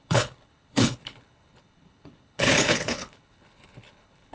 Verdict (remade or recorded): remade